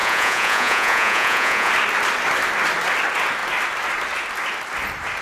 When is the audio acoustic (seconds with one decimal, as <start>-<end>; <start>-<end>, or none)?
1.7-5.2